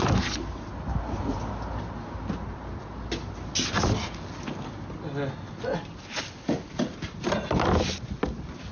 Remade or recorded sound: recorded